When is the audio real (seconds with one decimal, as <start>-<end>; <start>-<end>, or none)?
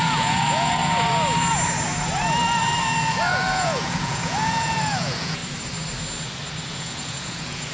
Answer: 0.8-3.1; 5.4-6.7